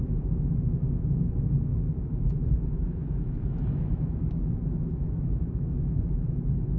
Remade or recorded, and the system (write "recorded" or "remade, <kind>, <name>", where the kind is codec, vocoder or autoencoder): remade, autoencoder, DAC-VAE